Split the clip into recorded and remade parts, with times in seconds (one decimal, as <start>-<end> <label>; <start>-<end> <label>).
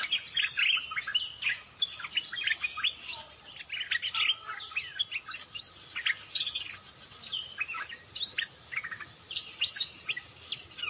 0.0-7.3 recorded; 7.3-10.5 remade; 10.5-10.9 recorded